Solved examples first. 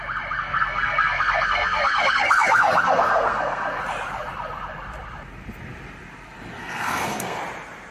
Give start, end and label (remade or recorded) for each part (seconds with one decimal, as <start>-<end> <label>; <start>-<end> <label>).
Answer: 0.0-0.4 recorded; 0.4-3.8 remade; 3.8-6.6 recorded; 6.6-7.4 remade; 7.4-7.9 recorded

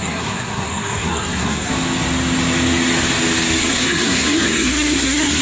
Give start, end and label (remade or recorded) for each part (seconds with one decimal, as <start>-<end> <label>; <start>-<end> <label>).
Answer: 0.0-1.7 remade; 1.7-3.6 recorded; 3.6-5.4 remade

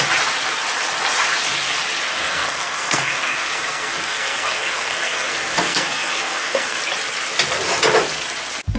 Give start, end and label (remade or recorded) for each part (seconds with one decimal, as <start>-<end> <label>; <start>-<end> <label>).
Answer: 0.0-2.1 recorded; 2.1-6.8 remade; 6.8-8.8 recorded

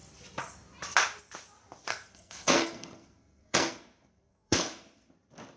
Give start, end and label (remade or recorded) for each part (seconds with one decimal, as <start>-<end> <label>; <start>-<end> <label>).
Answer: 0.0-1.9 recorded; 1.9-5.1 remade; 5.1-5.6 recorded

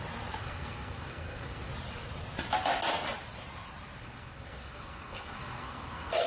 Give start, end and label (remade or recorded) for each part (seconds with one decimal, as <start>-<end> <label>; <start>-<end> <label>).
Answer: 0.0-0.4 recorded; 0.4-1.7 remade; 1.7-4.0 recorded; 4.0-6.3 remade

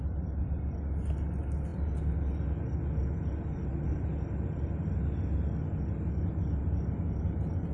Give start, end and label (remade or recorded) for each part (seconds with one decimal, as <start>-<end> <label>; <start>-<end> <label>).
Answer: 0.0-7.7 recorded

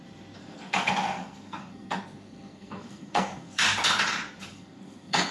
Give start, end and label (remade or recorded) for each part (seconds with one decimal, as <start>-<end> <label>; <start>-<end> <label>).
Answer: 0.0-0.4 recorded; 0.4-3.6 remade; 3.6-4.5 recorded; 4.5-5.3 remade

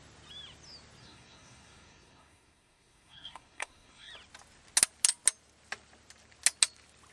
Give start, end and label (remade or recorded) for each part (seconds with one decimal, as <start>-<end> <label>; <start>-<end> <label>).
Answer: 0.0-1.0 recorded; 1.0-4.1 remade; 4.1-7.1 recorded